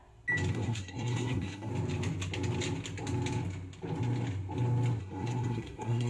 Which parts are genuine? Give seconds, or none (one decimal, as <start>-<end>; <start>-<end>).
0.0-0.5; 1.7-5.0